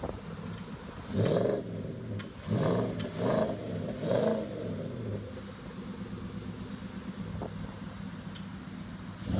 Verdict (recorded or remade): recorded